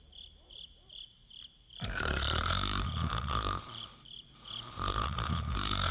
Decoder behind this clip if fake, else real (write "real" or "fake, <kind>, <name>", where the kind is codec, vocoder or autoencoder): fake, vocoder, BigVGAN v2